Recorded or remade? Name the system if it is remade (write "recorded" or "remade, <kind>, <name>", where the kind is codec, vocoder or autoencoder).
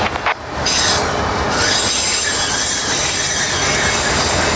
recorded